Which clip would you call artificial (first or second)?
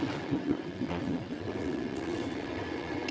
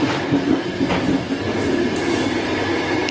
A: first